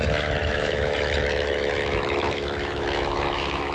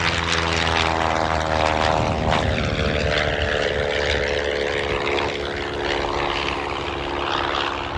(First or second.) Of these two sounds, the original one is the second